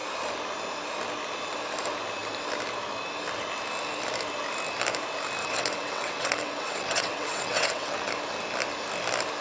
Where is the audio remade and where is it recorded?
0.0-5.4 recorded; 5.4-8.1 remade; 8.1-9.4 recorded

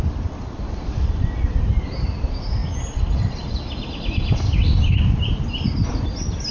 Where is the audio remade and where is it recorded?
0.0-6.5 recorded

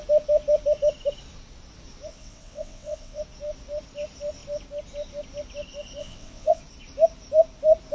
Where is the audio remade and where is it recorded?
0.0-2.1 recorded; 2.1-3.2 remade; 3.2-6.0 recorded; 6.0-6.6 remade; 6.6-7.9 recorded

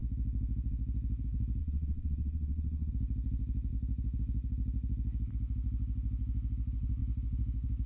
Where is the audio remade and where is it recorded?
0.0-1.6 recorded; 1.6-2.9 remade; 2.9-7.9 recorded

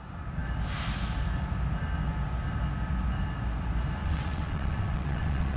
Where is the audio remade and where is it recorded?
0.0-4.0 recorded; 4.0-5.6 remade

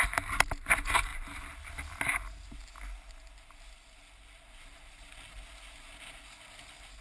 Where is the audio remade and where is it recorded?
0.0-7.0 recorded